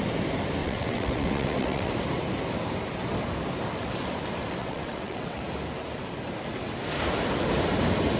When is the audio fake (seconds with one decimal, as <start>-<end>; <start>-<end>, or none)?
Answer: 0.6-1.9; 4.6-5.4